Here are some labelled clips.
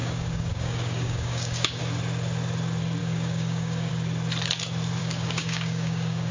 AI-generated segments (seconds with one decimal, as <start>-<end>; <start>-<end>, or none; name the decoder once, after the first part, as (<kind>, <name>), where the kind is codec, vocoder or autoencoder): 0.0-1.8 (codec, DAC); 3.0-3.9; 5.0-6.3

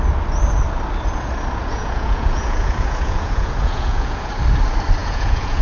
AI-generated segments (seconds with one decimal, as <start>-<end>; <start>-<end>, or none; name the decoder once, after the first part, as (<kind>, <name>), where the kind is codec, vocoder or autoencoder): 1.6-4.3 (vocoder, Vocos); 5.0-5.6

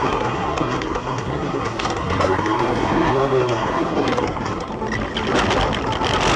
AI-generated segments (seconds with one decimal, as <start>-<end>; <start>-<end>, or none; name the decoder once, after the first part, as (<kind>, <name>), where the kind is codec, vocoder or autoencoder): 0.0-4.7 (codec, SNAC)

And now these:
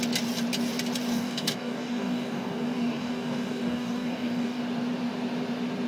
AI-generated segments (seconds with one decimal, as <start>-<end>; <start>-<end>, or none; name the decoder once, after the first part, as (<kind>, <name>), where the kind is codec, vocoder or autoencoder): 1.1-4.6 (codec, DAC)

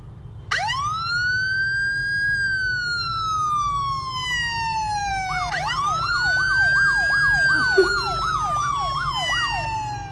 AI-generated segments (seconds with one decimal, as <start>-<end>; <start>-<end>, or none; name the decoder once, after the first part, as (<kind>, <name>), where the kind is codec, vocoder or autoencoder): none